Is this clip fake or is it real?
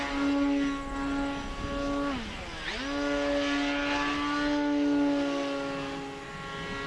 real